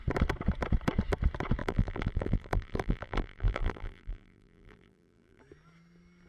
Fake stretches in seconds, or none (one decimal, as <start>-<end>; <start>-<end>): 1.6-5.4